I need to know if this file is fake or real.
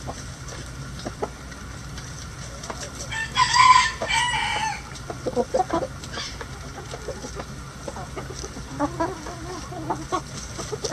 real